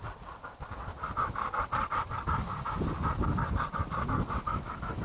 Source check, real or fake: real